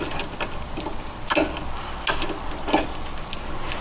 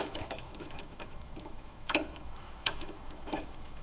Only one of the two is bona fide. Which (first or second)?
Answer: first